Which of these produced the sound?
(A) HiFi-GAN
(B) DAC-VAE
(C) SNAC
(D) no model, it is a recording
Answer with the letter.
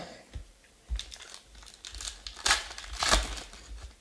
D